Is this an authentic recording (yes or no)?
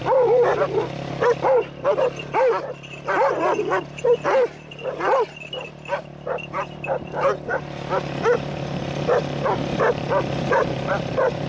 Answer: no